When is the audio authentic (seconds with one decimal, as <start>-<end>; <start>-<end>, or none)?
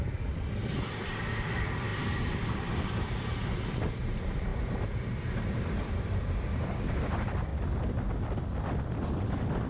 4.5-5.8; 7.5-8.6